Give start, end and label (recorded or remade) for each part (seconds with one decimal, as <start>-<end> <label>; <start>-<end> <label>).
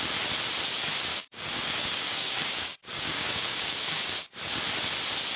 0.0-1.1 recorded; 1.1-4.3 remade; 4.3-5.4 recorded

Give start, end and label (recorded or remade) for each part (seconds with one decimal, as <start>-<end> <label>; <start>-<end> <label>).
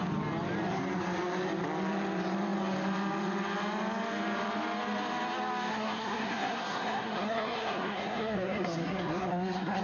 0.0-5.7 recorded; 5.7-9.8 remade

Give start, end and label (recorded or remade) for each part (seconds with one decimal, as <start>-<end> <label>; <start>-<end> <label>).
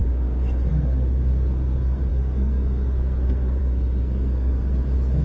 0.0-5.2 remade